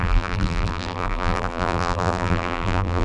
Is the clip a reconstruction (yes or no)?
yes